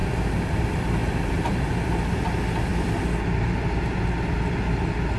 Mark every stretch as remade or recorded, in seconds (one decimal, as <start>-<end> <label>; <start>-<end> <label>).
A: 0.0-0.6 remade; 0.6-1.0 recorded; 1.0-1.6 remade; 1.6-5.2 recorded